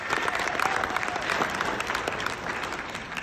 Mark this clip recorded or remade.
remade